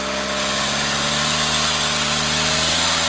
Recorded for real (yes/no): yes